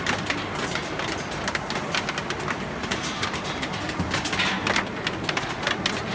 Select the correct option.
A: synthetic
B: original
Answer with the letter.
B